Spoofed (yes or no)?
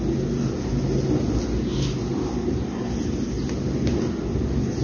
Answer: no